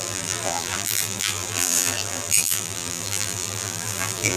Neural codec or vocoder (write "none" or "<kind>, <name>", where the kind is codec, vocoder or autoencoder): vocoder, BigVGAN v2